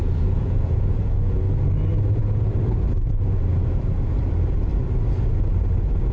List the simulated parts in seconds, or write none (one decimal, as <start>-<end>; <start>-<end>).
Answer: 0.0-1.4